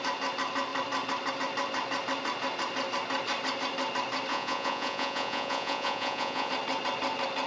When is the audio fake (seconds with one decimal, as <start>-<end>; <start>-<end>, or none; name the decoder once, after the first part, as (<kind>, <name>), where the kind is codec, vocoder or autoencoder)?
4.3-6.5 (vocoder, Vocos)